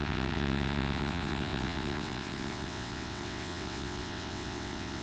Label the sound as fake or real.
fake